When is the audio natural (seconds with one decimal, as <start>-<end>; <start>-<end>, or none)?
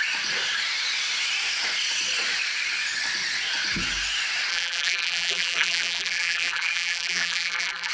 0.0-4.5